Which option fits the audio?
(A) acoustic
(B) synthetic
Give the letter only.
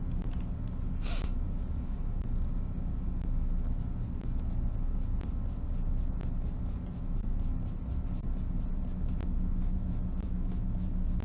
A